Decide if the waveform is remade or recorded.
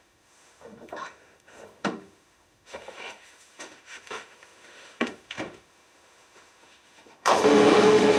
remade